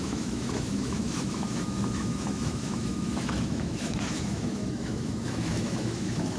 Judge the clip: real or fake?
fake